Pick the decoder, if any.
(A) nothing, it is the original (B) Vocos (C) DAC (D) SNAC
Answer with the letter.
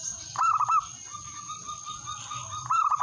A